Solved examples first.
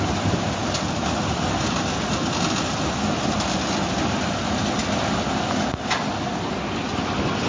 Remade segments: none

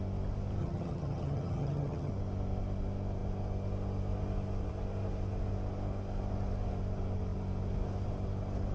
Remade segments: 0.6-2.1 (vocoder, HiFi-GAN)

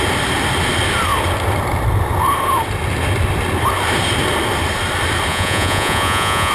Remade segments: 5.3-6.5 (vocoder, Vocos)

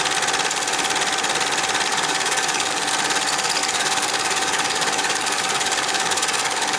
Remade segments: 1.9-2.8 (codec, DAC); 3.6-6.8